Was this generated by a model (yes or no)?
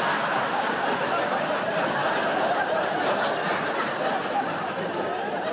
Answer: no